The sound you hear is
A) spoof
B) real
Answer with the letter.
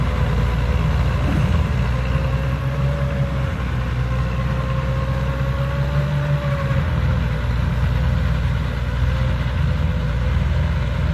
B